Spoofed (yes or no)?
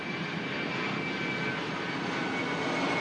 no